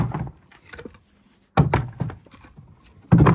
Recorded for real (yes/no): yes